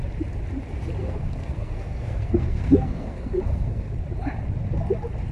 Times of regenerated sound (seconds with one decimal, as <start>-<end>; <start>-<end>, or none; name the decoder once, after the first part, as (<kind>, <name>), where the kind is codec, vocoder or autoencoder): 1.0-3.9 (codec, SNAC)